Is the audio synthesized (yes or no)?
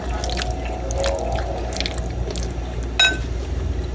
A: no